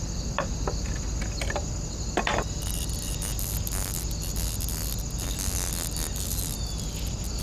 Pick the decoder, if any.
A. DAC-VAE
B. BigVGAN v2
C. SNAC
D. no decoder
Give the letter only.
D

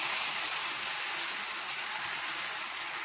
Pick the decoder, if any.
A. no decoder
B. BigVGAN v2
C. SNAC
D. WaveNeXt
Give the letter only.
A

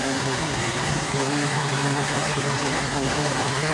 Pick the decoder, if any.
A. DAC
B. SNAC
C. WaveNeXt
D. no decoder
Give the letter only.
B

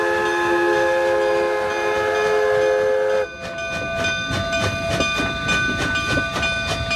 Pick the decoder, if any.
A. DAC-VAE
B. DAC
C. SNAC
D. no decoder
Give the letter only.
D